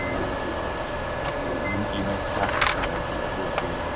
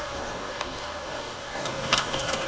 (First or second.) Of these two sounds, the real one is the first